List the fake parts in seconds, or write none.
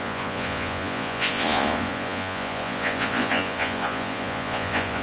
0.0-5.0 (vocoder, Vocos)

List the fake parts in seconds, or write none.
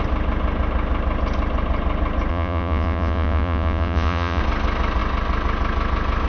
2.3-4.4 (vocoder, Vocos)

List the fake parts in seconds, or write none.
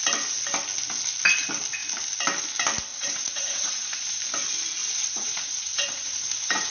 2.9-4.2 (vocoder, Vocos); 4.8-6.7